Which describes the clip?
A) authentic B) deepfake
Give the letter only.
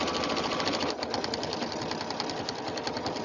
A